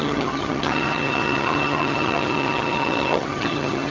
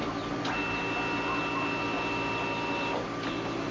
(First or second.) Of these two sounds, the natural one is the second